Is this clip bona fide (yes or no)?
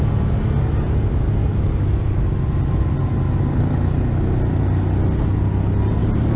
yes